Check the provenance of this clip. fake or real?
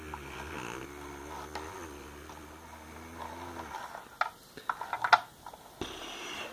real